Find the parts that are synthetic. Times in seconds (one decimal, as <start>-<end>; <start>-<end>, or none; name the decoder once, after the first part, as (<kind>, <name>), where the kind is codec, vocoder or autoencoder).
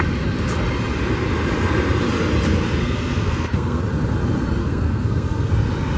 2.8-3.8 (codec, SNAC); 4.6-5.5